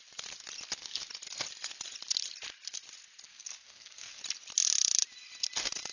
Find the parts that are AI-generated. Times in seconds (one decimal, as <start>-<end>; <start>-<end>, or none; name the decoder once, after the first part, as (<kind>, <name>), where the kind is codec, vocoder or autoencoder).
3.3-4.2 (codec, SNAC)